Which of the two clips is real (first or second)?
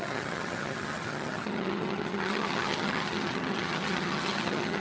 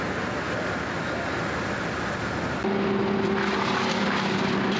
second